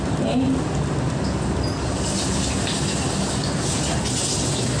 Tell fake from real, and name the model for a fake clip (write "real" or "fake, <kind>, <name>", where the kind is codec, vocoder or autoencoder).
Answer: real